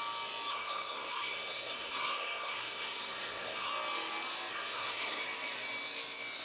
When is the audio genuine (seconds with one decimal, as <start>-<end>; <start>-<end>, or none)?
0.0-0.5; 3.7-4.5; 5.2-6.4